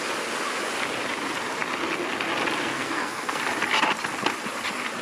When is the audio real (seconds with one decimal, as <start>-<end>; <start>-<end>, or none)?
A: 0.0-2.6; 3.4-5.0